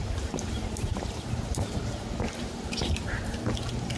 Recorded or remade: remade